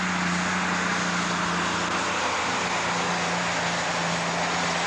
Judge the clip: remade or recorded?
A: recorded